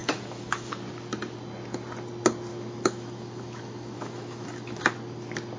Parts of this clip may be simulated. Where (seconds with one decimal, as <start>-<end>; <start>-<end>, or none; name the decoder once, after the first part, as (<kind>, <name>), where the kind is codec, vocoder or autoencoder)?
0.0-0.7 (autoencoder, DAC-VAE); 2.5-4.8